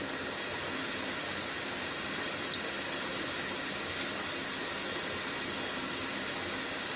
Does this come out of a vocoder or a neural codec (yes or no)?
no